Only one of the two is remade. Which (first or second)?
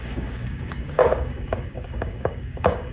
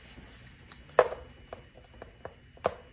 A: first